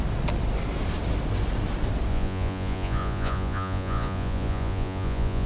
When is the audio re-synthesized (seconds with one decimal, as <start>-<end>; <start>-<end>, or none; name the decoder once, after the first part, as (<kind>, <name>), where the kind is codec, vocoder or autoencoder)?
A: 2.1-5.5 (vocoder, Vocos)